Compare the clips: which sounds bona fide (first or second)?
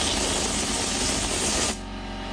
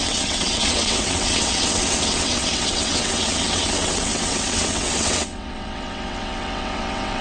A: first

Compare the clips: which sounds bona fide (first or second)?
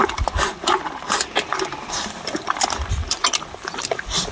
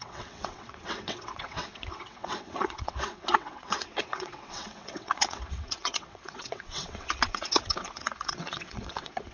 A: first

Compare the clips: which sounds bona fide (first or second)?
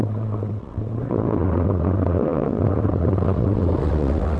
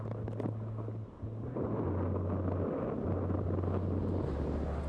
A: second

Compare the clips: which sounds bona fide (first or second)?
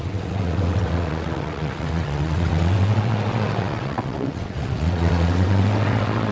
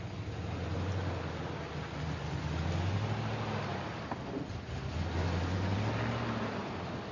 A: second